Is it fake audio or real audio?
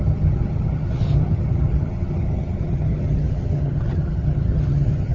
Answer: fake